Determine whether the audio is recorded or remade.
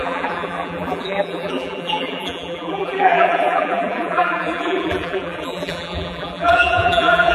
remade